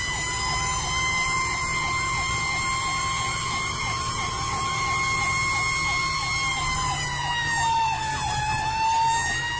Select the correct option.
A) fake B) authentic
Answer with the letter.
A